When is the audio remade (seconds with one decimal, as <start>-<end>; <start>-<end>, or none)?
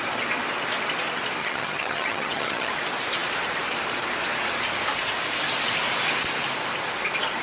1.4-2.7